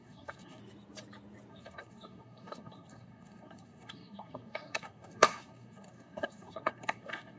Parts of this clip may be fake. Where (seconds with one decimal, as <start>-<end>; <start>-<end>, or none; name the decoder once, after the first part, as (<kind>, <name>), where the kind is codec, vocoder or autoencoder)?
0.0-0.6 (codec, SNAC); 1.5-7.4